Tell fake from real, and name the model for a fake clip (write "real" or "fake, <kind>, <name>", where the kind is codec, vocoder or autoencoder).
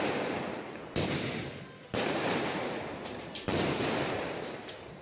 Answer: fake, vocoder, BigVGAN v2